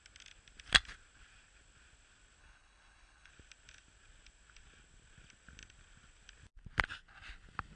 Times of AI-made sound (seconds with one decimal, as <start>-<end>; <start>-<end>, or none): 2.4-3.3